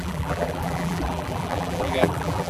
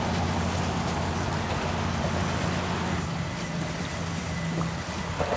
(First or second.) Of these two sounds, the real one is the second